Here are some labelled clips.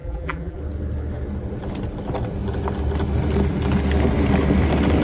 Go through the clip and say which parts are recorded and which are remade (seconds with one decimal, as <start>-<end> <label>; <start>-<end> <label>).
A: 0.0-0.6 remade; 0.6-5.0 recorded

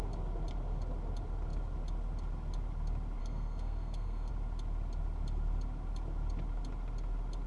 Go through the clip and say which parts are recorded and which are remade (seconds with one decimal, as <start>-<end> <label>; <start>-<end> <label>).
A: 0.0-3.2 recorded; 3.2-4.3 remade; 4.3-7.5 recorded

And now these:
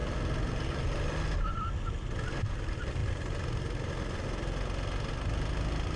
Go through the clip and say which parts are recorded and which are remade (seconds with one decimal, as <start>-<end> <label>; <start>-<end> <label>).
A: 0.0-6.0 recorded

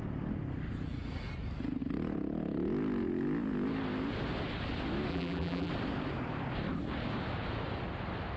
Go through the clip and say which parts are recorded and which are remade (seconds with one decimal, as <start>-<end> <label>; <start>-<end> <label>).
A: 0.0-5.1 recorded; 5.1-5.7 remade; 5.7-8.4 recorded

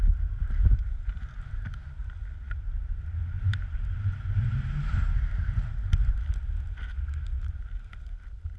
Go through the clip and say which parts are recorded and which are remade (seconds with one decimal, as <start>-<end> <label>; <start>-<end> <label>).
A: 0.0-8.6 recorded

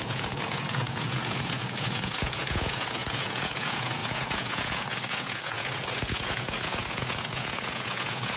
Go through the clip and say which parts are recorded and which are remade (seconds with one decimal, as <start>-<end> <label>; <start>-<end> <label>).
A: 0.0-8.4 remade